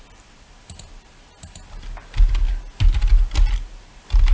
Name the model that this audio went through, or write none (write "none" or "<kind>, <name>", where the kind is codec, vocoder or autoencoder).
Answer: none